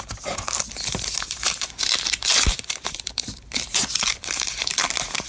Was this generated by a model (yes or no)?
yes